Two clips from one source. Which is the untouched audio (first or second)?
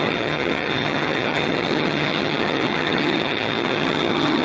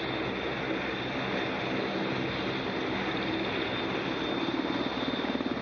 second